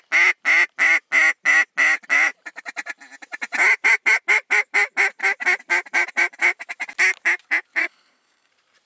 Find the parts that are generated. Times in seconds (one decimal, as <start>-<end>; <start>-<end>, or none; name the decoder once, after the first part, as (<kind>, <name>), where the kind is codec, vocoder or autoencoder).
7.8-8.5 (codec, SNAC)